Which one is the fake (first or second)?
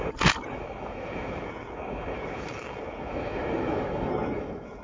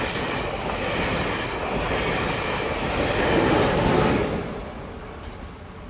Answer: first